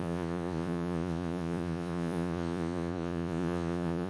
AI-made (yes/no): yes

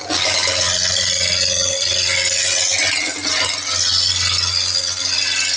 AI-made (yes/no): no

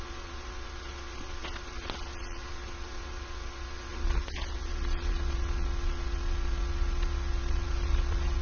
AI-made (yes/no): yes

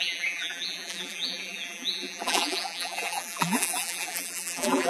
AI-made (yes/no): yes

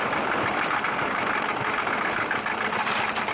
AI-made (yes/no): no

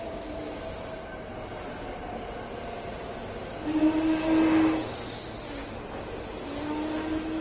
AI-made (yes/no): no